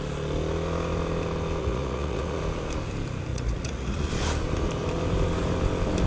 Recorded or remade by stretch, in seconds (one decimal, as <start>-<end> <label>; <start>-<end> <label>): 0.0-1.6 recorded; 1.6-2.4 remade; 2.4-3.3 recorded; 3.3-4.1 remade; 4.1-6.1 recorded